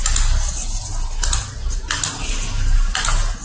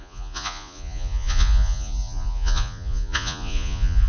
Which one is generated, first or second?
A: second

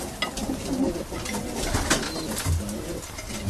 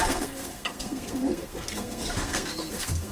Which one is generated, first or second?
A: second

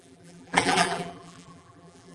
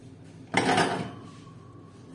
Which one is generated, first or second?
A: first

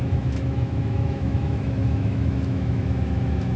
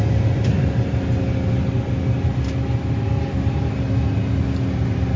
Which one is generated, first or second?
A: first